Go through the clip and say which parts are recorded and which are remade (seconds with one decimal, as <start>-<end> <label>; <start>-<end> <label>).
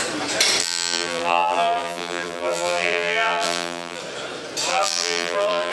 0.0-0.6 recorded; 0.6-4.0 remade; 4.0-4.7 recorded; 4.7-5.7 remade